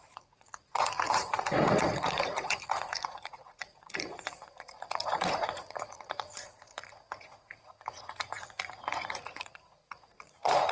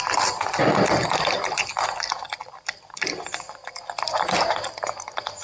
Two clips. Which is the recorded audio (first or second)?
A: second